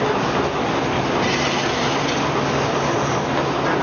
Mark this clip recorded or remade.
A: recorded